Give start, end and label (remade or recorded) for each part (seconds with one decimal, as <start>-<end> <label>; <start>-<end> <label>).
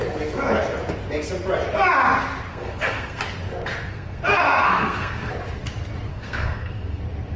0.0-2.5 recorded; 2.5-3.2 remade; 3.2-3.9 recorded; 3.9-5.3 remade; 5.3-6.1 recorded; 6.1-7.0 remade; 7.0-7.4 recorded